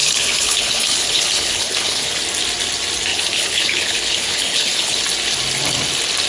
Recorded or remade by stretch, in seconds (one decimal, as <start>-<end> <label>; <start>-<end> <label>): 0.0-2.2 remade; 2.2-3.1 recorded; 3.1-5.0 remade; 5.0-6.3 recorded